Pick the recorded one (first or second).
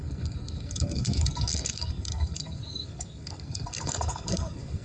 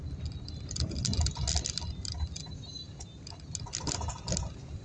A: second